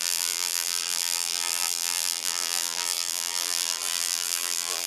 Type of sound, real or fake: fake